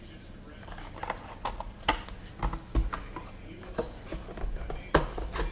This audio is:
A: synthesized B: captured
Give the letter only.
B